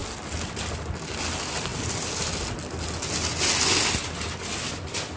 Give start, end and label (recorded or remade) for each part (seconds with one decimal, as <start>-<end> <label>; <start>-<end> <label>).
0.0-5.2 recorded